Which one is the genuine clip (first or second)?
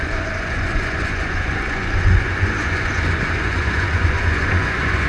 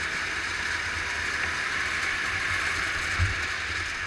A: second